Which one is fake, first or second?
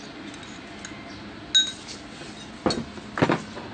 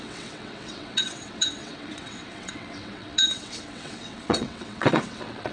second